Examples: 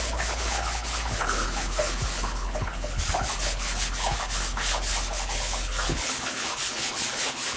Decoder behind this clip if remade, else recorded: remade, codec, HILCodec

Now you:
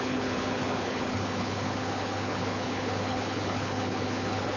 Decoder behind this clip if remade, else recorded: remade, codec, HILCodec